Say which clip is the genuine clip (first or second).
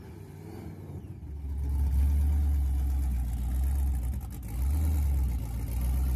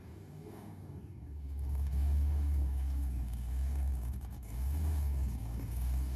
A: first